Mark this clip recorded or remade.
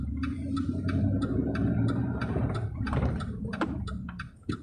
remade